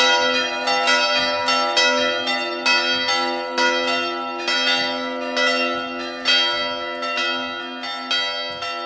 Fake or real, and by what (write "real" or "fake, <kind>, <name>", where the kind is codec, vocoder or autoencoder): real